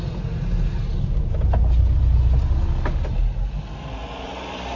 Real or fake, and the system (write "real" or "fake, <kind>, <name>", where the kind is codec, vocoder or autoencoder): real